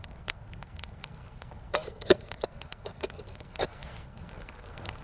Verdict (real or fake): fake